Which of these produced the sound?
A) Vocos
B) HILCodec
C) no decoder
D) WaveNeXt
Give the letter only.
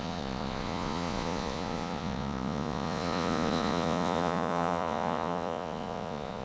A